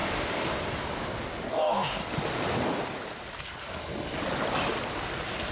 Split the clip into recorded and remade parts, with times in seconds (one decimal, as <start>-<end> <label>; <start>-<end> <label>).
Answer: 0.0-1.5 recorded; 1.5-2.0 remade; 2.0-5.5 recorded